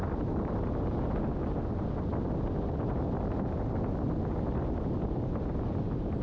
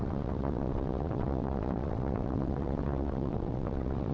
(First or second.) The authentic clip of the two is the first